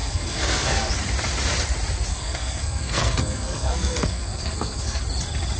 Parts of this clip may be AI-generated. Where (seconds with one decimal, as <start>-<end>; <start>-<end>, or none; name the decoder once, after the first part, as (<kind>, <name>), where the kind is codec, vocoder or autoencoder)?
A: 0.0-0.9 (codec, SNAC); 2.1-5.0